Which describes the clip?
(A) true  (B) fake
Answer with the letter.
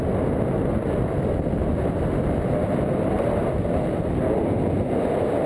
A